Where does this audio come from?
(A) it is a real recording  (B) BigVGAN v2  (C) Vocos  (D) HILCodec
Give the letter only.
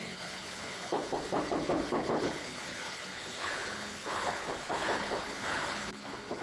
D